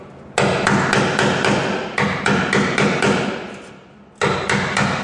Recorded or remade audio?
recorded